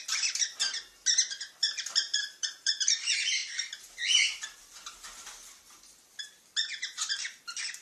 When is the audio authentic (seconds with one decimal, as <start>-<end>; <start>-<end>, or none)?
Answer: 0.0-1.6; 2.7-7.8